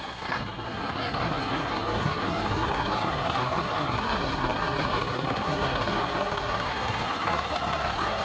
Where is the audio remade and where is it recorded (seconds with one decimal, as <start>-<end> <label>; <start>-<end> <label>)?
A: 0.0-8.2 remade